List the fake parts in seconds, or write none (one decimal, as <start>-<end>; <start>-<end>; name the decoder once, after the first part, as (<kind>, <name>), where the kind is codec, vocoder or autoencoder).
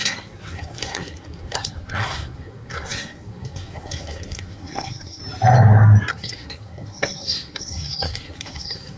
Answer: 0.0-5.2 (codec, SNAC); 6.1-9.0